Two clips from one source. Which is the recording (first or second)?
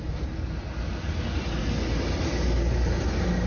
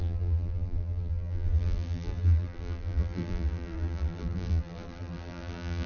first